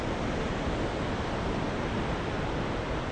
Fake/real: real